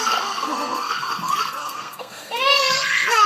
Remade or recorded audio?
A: remade